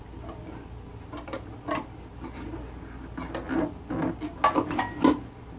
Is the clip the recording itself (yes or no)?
yes